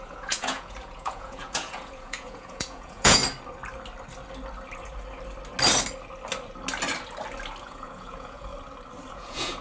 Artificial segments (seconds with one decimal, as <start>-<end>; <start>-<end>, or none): 0.0-3.2; 7.6-8.5; 9.1-9.6